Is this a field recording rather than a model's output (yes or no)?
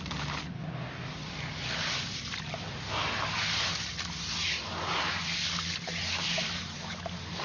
yes